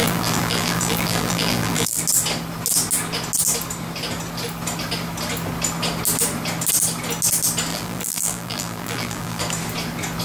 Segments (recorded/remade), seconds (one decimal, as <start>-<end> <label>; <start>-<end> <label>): 0.0-2.0 remade; 2.0-7.7 recorded; 7.7-9.4 remade; 9.4-10.2 recorded